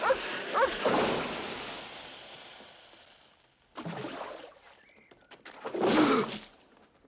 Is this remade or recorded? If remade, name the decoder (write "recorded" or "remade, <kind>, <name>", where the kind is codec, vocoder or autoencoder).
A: recorded